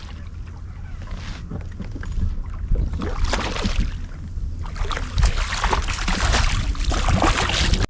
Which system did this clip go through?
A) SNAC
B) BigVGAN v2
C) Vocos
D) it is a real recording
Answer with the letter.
D